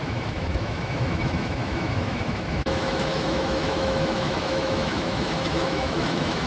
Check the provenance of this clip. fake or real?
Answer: fake